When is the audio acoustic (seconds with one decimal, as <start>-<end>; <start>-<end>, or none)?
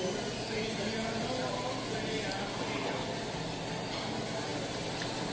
0.0-5.3